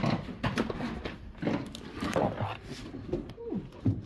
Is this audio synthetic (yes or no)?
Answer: no